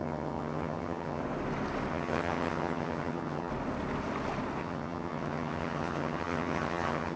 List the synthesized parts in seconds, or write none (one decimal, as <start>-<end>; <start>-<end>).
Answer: 0.0-1.2; 1.9-3.5; 4.6-7.2